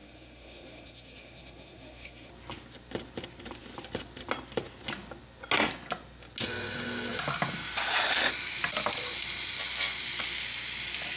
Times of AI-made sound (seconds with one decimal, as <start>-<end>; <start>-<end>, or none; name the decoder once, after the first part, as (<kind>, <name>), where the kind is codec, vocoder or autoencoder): 0.0-2.3 (codec, SNAC)